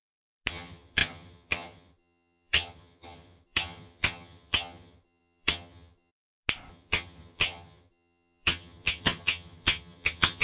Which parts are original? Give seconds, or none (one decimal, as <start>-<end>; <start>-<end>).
0.0-0.5; 6.1-6.7